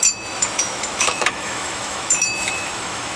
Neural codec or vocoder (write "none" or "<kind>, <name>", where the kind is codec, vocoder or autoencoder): autoencoder, DAC-VAE